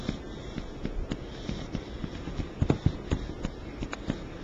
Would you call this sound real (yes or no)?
yes